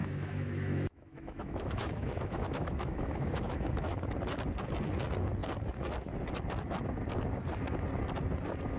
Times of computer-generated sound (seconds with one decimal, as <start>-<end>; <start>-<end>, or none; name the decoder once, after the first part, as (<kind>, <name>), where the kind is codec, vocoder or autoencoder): 0.0-4.1 (autoencoder, DAC-VAE)